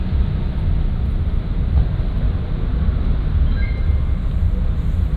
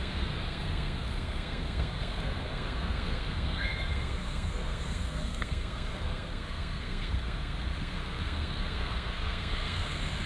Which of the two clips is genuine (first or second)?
first